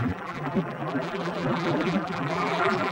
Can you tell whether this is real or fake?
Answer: fake